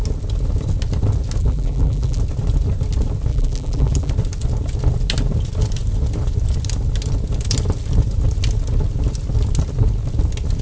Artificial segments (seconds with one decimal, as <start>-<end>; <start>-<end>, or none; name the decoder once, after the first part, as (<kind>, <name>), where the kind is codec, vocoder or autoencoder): 1.4-2.2 (vocoder, BigVGAN v2); 3.3-4.1